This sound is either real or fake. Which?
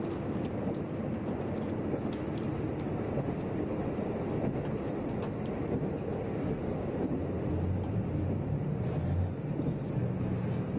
real